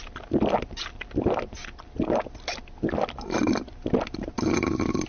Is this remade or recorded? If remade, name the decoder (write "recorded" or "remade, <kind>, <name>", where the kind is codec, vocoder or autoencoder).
recorded